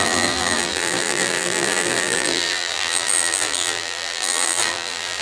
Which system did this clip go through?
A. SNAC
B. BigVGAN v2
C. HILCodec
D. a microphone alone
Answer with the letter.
B